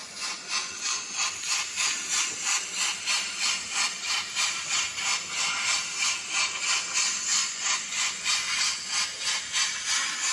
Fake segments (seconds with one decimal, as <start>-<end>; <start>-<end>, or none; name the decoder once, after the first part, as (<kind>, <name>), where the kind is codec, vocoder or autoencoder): 0.0-1.2 (vocoder, Vocos); 7.3-8.6